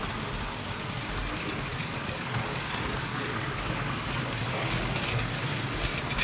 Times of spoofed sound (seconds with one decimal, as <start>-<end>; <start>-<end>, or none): 1.7-5.4